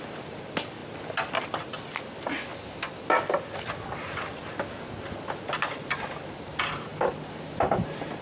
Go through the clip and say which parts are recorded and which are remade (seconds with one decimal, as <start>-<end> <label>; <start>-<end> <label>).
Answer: 0.0-0.8 recorded; 0.8-1.4 remade; 1.4-6.9 recorded; 6.9-8.2 remade